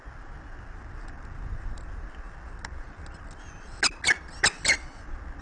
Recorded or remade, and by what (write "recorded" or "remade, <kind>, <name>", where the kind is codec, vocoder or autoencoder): recorded